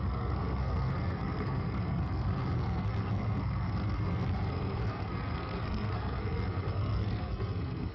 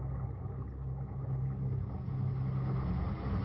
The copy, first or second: first